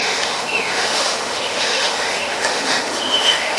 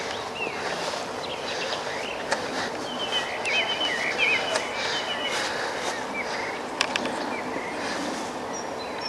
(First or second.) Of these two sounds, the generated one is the first